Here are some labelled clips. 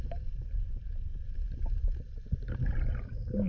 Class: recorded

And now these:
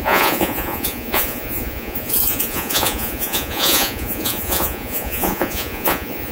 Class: remade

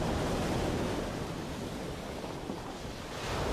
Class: recorded